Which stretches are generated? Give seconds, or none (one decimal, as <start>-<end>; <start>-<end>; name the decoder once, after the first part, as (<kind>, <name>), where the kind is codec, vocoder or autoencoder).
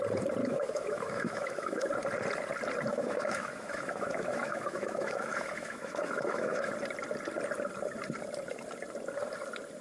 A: 0.4-1.9 (autoencoder, DAC-VAE); 2.9-6.7